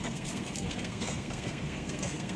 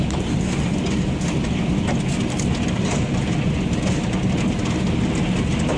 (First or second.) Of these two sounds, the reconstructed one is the first